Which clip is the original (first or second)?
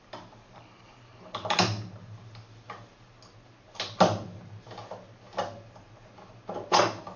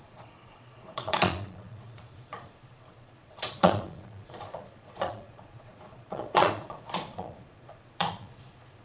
first